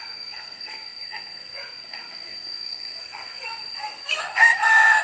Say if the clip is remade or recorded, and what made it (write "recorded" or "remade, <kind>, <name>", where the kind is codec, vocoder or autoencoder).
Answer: remade, codec, SNAC